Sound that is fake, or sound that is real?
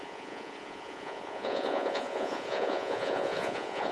fake